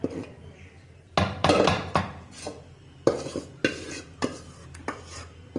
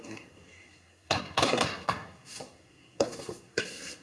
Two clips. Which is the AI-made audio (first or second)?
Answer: second